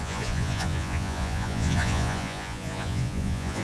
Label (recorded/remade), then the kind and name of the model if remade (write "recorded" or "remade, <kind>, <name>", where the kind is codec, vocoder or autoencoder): remade, vocoder, Vocos